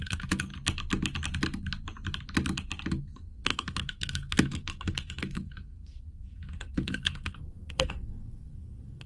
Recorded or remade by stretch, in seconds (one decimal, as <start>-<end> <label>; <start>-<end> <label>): 0.0-0.5 remade; 0.5-2.9 recorded; 2.9-9.1 remade